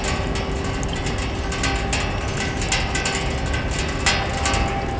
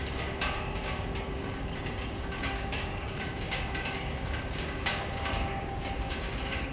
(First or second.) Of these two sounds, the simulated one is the second